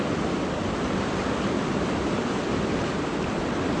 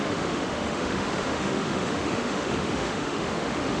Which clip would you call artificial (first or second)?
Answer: second